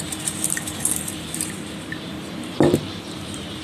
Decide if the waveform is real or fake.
fake